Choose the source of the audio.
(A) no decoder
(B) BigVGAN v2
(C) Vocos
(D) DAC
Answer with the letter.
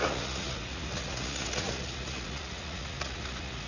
C